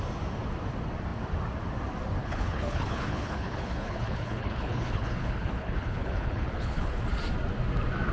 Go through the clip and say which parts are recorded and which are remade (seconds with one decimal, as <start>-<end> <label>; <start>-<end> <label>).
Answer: 0.0-2.2 recorded; 2.2-7.0 remade; 7.0-8.1 recorded